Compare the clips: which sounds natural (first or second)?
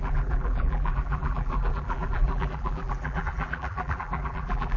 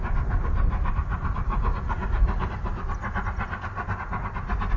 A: second